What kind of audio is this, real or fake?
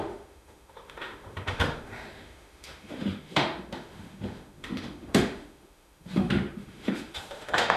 fake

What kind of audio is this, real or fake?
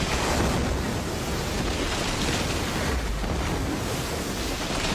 real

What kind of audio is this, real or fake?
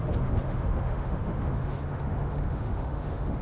fake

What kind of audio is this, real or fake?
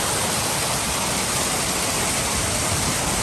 real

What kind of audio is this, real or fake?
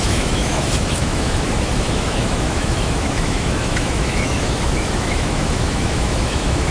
fake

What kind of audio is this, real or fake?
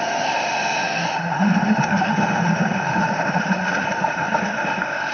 fake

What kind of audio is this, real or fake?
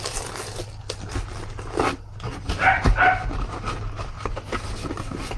real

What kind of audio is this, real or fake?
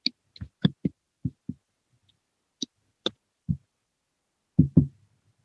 real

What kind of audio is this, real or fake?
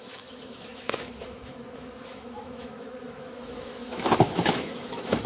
fake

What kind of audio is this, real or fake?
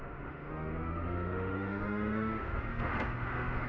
fake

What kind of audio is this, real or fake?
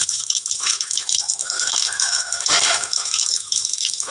fake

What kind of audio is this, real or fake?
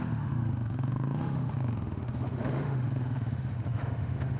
fake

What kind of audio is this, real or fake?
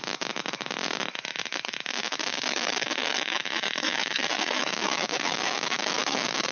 fake